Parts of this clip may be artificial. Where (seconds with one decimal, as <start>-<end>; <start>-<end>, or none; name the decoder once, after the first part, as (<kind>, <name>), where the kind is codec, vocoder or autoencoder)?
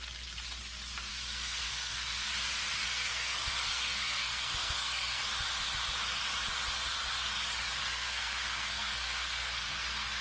1.1-2.3 (codec, SNAC); 2.8-5.2; 7.8-10.2